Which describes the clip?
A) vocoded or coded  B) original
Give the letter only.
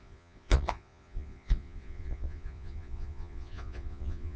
A